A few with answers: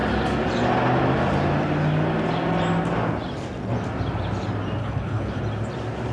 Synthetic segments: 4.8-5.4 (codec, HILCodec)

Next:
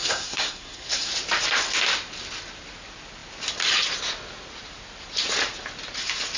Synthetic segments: 0.0-1.1 (codec, SNAC)